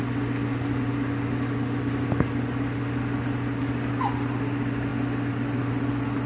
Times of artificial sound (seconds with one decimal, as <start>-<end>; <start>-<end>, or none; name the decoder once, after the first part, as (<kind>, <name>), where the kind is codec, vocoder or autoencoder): none